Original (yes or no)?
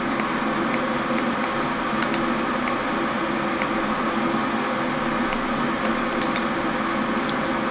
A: yes